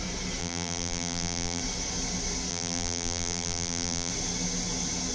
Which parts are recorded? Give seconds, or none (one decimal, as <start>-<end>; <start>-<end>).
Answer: 0.0-0.4; 1.6-2.5; 4.1-5.1